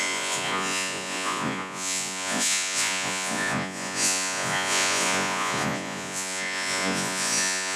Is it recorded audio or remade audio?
remade